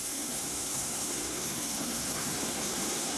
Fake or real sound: fake